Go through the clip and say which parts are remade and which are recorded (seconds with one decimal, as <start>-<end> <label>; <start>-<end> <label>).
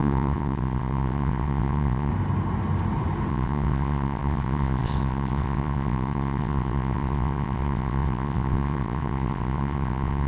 0.0-2.1 remade; 2.1-3.3 recorded; 3.3-10.3 remade